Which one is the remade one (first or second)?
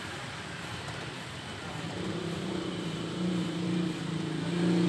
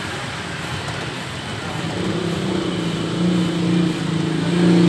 first